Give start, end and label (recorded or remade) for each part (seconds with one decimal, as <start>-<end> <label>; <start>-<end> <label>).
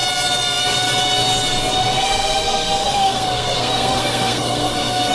0.0-1.8 recorded; 1.8-5.1 remade